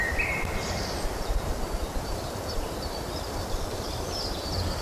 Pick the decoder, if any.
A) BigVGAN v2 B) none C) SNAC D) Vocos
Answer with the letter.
A